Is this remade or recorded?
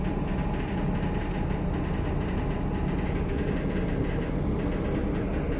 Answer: recorded